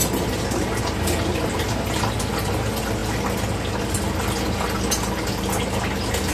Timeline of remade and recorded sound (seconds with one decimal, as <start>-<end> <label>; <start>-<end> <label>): 0.0-6.3 recorded